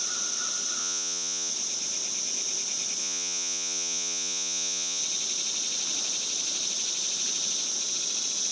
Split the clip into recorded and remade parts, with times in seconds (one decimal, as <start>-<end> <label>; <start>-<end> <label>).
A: 0.0-0.8 recorded; 0.8-1.5 remade; 1.5-3.0 recorded; 3.0-5.0 remade; 5.0-8.5 recorded